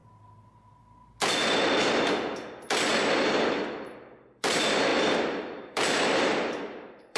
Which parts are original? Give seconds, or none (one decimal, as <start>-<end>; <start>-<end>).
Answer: 0.0-4.3